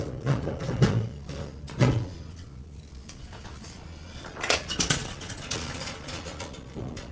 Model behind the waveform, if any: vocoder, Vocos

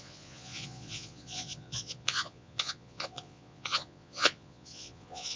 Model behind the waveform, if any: vocoder, Vocos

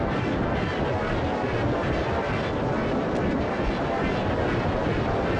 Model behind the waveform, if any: none